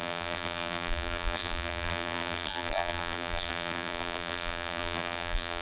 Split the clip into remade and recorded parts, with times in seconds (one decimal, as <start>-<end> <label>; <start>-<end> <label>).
0.0-5.6 remade